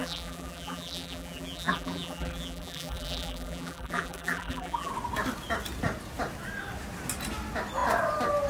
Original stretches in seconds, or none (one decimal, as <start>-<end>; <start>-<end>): 4.9-8.5